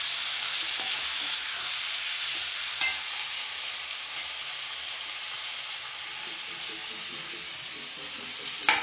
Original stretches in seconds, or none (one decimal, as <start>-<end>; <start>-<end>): 0.0-0.5; 1.7-8.8